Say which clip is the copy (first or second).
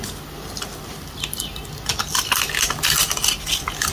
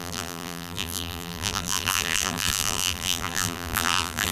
second